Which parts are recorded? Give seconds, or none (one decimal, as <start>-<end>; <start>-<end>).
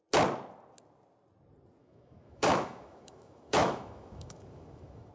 0.0-1.8